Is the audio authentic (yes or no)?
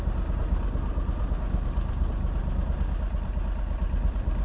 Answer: yes